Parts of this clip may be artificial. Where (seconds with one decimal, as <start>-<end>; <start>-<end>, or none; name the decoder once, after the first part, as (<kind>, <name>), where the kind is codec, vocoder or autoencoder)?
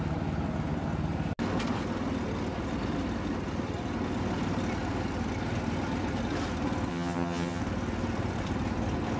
6.9-7.6 (vocoder, HiFi-GAN)